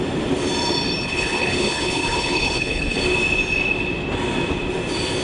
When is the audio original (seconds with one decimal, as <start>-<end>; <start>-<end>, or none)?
0.0-1.0; 3.0-5.2

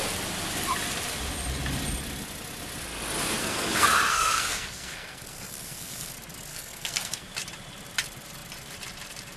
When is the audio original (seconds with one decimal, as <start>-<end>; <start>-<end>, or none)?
0.0-3.4; 6.1-6.5; 7.3-9.4

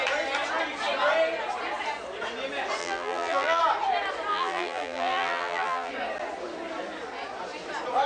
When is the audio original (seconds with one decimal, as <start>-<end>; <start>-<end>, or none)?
0.0-2.8; 3.6-4.3; 5.9-8.1